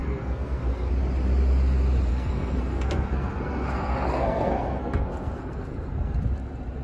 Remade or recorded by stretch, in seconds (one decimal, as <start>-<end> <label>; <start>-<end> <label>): 0.0-0.9 remade; 0.9-2.1 recorded; 2.1-6.2 remade; 6.2-6.8 recorded